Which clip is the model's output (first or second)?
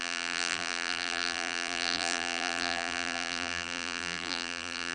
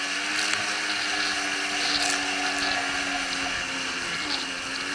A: first